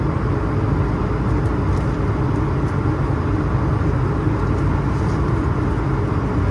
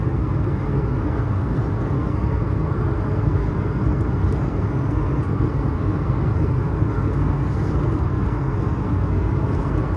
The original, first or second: first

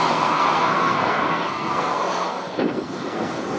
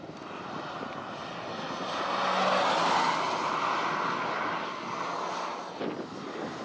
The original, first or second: second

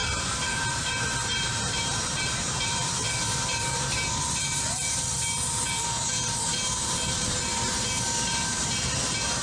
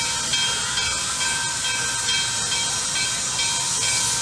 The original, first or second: second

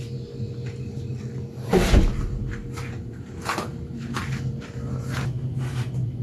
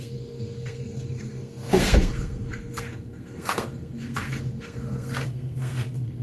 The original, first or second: first